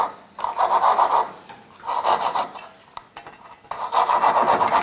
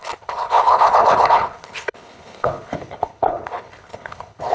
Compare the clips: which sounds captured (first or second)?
first